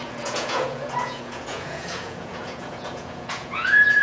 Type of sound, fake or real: fake